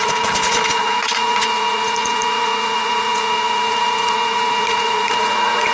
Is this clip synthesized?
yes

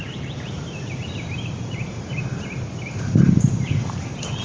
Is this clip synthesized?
yes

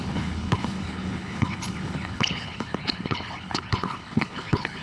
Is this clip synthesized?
yes